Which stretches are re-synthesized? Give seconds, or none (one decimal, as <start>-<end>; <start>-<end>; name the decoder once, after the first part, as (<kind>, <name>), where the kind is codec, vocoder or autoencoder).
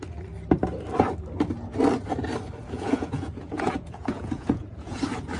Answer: 2.6-5.0 (vocoder, Vocos)